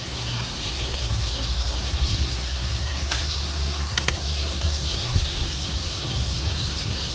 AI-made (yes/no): yes